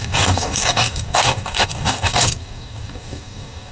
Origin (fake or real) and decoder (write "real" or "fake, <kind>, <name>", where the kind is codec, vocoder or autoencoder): fake, codec, DAC